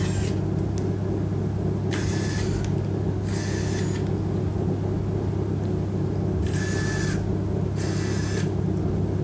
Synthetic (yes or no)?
no